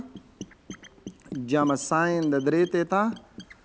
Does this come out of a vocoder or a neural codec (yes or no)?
no